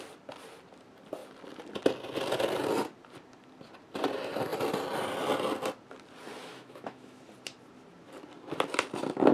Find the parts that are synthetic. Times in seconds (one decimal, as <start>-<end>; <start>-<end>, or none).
6.4-7.2